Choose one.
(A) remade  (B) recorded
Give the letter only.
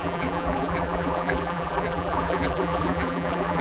A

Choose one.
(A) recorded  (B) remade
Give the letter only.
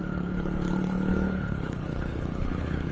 B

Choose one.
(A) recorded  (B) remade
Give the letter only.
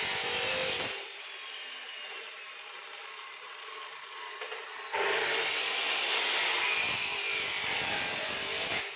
A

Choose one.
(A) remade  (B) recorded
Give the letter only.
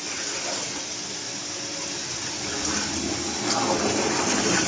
B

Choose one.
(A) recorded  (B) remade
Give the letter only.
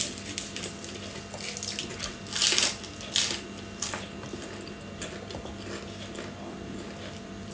A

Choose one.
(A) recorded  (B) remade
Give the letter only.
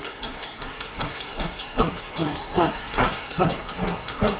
B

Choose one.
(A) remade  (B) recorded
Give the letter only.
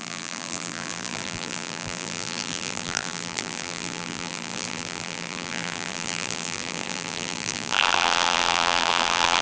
A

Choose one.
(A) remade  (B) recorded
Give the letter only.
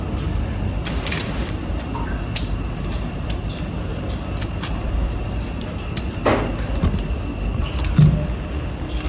B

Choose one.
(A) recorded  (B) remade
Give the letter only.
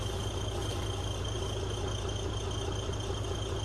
A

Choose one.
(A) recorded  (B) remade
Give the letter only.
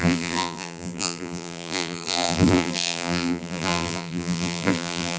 B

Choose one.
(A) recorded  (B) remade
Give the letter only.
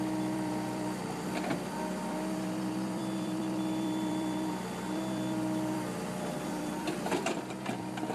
B